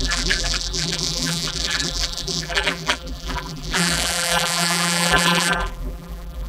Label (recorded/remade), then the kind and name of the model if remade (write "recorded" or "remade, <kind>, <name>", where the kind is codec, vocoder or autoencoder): remade, vocoder, BigVGAN v2